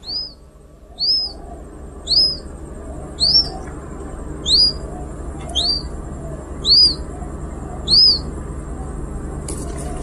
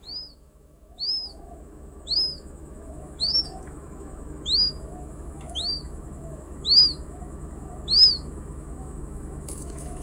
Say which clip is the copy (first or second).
second